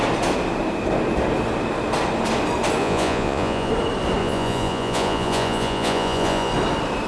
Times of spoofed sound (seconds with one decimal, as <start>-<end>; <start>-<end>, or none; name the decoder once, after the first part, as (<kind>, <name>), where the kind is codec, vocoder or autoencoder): 2.8-3.7 (vocoder, Vocos); 4.2-6.5